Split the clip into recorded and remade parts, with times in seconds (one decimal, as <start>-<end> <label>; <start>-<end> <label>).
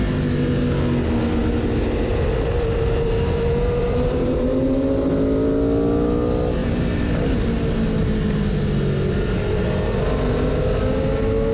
0.0-2.1 recorded; 2.1-5.1 remade; 5.1-11.5 recorded